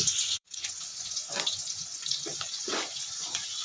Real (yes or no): no